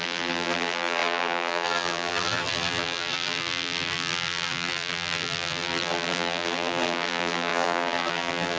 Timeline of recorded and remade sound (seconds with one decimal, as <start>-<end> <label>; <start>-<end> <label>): 0.0-8.6 remade